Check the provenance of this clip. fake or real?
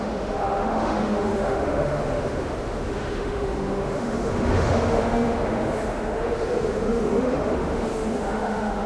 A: fake